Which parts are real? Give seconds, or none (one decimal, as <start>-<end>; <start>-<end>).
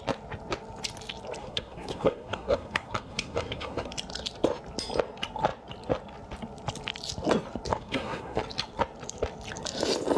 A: 0.0-1.4; 3.9-7.7; 8.4-10.2